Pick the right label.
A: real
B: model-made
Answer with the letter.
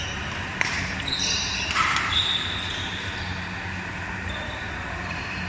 B